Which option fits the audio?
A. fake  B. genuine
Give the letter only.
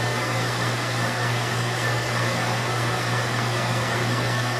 A